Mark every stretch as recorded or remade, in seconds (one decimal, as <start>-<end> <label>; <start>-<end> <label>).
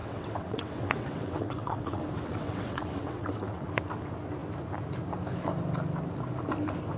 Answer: 0.0-3.7 remade; 3.7-7.0 recorded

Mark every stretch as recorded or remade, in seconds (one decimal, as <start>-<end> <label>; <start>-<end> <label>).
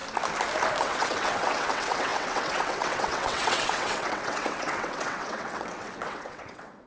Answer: 0.0-0.8 recorded; 0.8-6.9 remade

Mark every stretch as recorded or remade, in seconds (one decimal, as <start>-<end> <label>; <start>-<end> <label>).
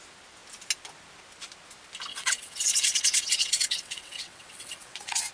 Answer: 0.0-2.1 recorded; 2.1-5.3 remade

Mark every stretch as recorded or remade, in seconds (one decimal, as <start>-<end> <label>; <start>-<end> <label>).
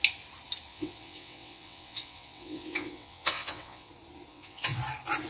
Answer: 0.0-0.7 recorded; 0.7-3.9 remade; 3.9-4.3 recorded; 4.3-4.8 remade; 4.8-5.3 recorded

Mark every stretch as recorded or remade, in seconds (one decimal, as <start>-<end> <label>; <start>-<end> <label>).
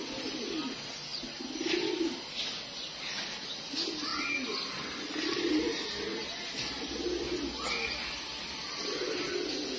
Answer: 0.0-9.8 recorded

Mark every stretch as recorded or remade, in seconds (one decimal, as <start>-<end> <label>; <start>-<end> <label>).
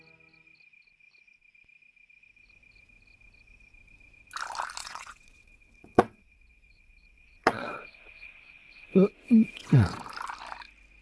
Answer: 0.0-4.8 recorded; 4.8-10.0 remade; 10.0-11.0 recorded